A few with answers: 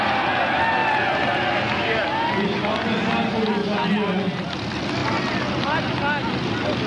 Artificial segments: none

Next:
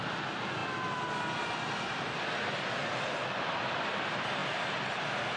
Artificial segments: none